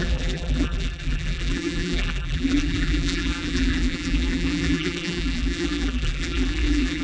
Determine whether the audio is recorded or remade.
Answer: remade